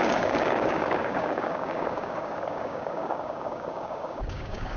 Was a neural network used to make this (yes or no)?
yes